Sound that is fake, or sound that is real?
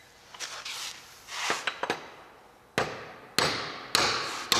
real